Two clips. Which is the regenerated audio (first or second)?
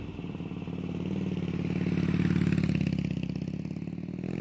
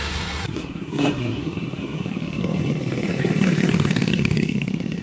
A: second